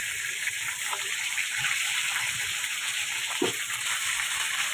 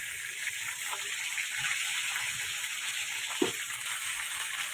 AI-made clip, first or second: first